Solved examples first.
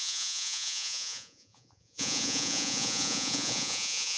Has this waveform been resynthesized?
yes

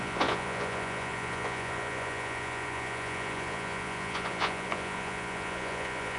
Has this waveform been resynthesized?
yes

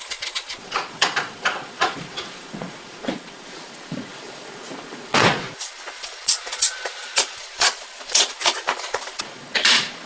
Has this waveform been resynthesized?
yes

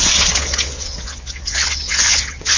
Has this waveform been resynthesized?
yes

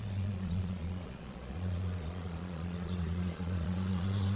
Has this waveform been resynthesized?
yes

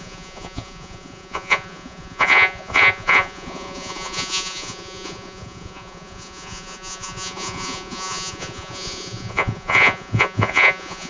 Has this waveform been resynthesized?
yes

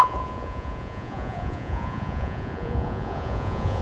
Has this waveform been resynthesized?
yes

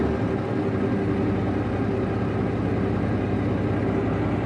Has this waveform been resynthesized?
no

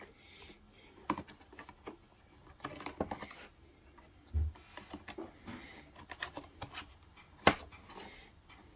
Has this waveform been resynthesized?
no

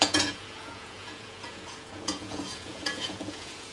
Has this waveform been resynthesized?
yes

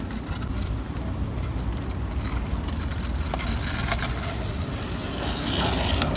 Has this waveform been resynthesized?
no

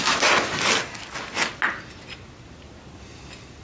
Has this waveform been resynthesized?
no